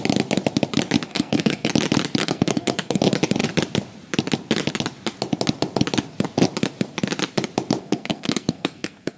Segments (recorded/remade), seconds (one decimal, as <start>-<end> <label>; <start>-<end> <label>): 0.0-1.1 recorded; 1.1-1.7 remade; 1.7-2.2 recorded; 2.2-3.0 remade; 3.0-7.8 recorded; 7.8-9.2 remade